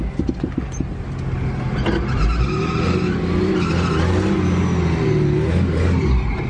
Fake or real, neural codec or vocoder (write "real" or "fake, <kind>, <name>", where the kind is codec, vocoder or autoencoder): real